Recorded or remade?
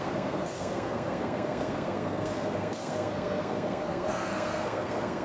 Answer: remade